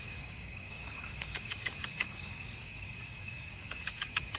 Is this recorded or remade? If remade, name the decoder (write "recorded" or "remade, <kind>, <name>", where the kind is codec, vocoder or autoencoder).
remade, codec, DAC